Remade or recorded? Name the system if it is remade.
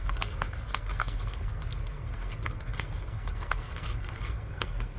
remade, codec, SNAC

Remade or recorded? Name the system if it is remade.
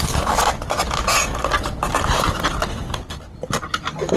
recorded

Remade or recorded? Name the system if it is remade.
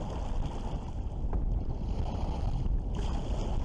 recorded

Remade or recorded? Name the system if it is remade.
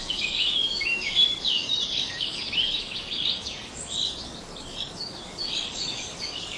remade, codec, DAC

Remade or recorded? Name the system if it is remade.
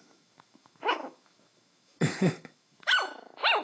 remade, autoencoder, DAC-VAE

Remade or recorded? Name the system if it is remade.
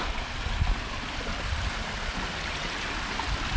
recorded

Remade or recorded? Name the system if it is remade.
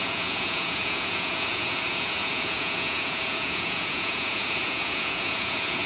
remade, vocoder, Vocos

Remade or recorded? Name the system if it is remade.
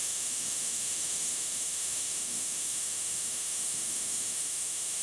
remade, autoencoder, DAC-VAE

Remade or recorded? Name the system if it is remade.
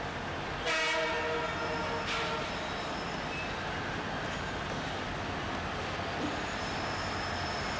recorded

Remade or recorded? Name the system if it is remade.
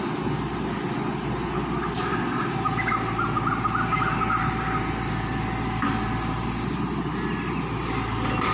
recorded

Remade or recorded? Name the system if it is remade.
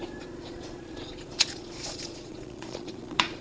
remade, vocoder, Vocos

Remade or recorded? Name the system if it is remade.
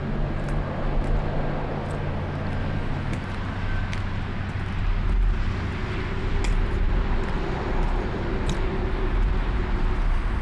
recorded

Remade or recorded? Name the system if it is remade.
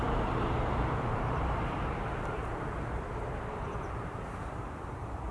remade, vocoder, BigVGAN v2